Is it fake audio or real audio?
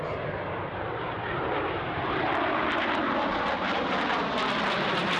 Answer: real